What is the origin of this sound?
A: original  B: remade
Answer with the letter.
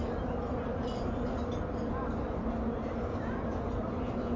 A